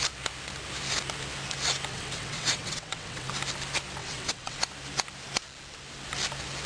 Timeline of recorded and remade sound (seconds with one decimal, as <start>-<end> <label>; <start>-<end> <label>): 0.0-1.9 recorded; 1.9-3.3 remade; 3.3-4.0 recorded; 4.0-4.6 remade; 4.6-6.7 recorded